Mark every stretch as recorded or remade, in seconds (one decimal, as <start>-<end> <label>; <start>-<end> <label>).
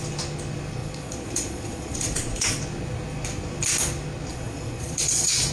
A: 0.0-0.8 recorded; 0.8-2.6 remade; 2.6-4.3 recorded; 4.3-5.5 remade